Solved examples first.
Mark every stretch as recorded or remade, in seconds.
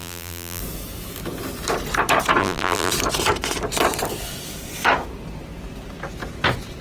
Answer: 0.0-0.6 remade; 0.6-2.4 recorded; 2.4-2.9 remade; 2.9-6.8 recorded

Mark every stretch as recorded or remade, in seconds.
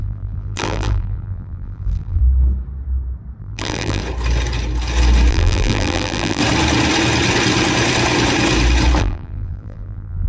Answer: 0.0-2.2 remade; 2.2-3.4 recorded; 3.4-4.0 remade; 4.0-5.3 recorded; 5.3-6.4 remade; 6.4-9.0 recorded; 9.0-10.3 remade